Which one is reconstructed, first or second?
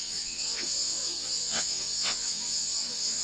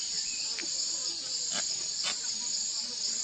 first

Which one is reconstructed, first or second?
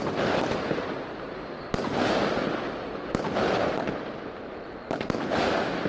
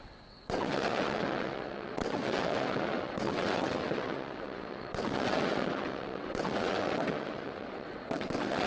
second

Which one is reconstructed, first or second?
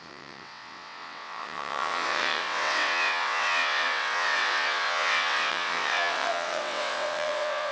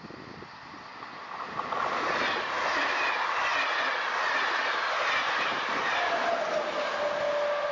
first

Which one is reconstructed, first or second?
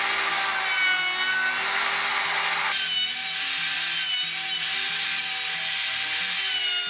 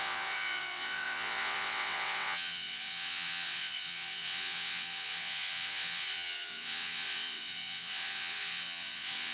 second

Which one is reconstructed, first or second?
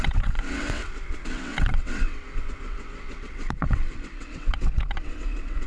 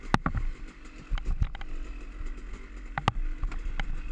first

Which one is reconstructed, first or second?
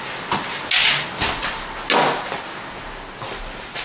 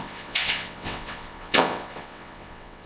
second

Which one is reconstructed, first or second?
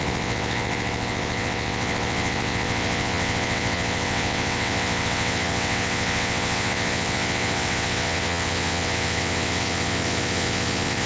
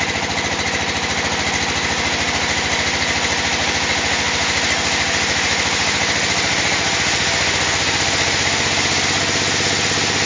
first